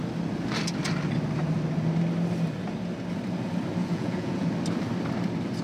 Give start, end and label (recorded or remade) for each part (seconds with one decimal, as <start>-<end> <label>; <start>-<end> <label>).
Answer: 0.0-3.8 recorded; 3.8-4.5 remade; 4.5-5.6 recorded

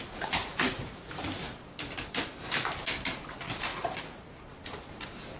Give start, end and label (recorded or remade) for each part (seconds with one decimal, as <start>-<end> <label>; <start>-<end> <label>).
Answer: 0.0-0.4 recorded; 0.4-1.1 remade; 1.1-3.7 recorded; 3.7-4.2 remade; 4.2-5.4 recorded

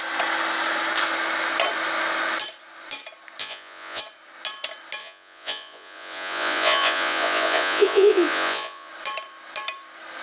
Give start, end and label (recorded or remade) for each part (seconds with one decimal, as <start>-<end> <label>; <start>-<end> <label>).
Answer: 0.0-3.4 recorded; 3.4-4.0 remade; 4.0-5.0 recorded; 5.0-8.9 remade; 8.9-10.2 recorded